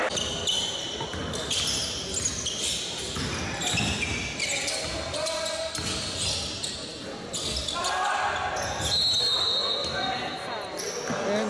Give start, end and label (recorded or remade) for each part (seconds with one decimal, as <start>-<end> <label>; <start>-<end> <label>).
0.0-11.5 recorded